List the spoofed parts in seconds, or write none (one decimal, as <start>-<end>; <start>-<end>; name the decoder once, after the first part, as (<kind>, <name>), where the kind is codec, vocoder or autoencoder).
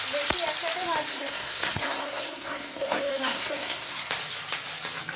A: 1.1-4.1 (codec, SNAC)